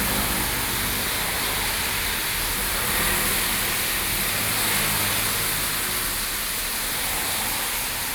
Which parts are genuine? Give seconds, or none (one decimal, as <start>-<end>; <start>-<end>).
0.0-1.3; 2.8-8.1